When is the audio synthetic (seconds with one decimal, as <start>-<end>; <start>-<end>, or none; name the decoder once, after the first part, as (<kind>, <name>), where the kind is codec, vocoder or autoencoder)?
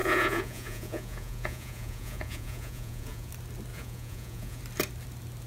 0.0-3.3 (vocoder, Vocos); 3.7-4.6